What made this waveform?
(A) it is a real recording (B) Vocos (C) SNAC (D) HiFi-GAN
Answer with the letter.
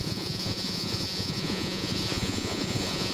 B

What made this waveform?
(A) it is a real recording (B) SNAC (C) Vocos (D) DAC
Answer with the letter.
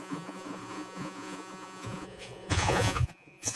C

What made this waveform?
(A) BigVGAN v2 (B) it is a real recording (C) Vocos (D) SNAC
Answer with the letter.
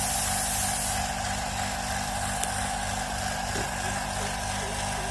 B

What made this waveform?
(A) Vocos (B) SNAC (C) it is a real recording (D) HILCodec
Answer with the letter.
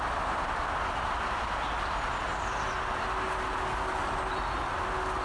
C